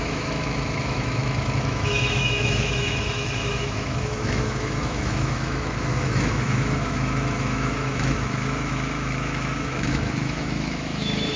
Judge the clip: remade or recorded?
remade